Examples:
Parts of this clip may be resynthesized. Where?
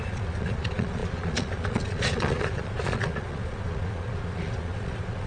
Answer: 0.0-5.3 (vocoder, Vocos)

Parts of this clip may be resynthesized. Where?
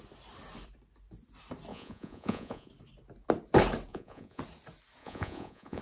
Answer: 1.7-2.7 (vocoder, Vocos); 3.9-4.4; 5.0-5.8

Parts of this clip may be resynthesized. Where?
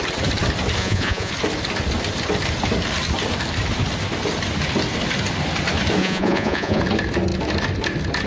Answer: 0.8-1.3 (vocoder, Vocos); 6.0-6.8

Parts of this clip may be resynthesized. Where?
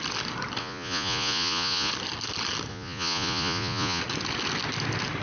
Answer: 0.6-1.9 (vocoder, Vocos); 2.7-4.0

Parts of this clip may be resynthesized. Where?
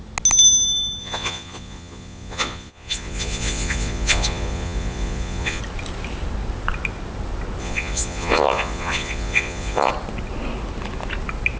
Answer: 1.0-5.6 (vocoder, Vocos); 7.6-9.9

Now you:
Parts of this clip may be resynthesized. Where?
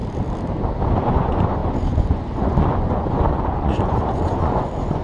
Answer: 1.0-5.0 (vocoder, Vocos)